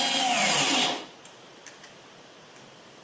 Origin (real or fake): real